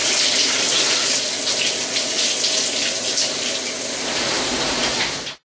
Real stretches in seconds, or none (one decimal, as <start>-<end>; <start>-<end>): 0.0-5.6